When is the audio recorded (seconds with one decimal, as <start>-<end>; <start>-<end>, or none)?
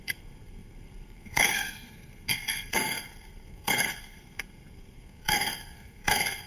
none